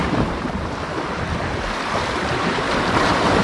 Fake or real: real